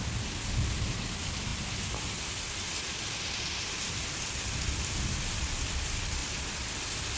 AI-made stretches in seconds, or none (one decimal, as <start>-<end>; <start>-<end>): none